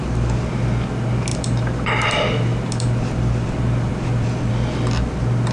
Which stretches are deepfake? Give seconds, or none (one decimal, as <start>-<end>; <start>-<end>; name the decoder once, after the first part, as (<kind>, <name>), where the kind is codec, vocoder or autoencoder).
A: 1.3-4.5 (vocoder, BigVGAN v2)